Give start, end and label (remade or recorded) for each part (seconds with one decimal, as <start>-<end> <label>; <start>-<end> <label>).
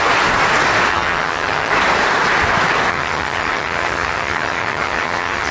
0.0-0.9 recorded; 0.9-1.7 remade; 1.7-2.9 recorded; 2.9-5.5 remade